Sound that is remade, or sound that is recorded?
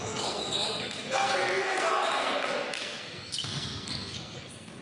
remade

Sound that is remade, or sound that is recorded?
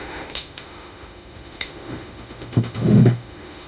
remade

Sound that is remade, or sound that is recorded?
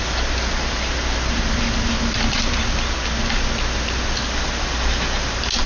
recorded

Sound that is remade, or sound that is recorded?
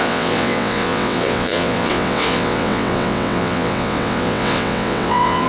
remade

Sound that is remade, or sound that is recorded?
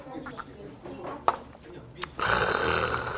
recorded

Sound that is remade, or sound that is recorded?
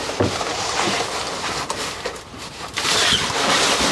remade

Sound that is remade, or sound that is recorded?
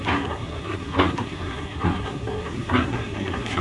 remade